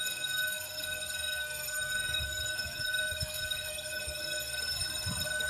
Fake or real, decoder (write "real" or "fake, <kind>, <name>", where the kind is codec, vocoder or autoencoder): fake, codec, SNAC